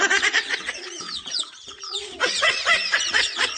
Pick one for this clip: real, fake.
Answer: fake